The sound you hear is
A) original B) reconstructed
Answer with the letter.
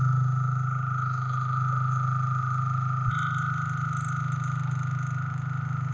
A